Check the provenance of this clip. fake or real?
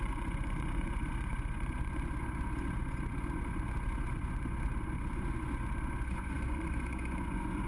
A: fake